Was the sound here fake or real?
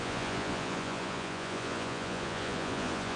fake